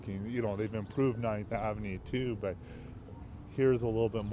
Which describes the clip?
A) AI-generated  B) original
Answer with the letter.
A